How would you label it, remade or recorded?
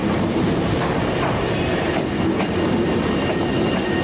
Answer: recorded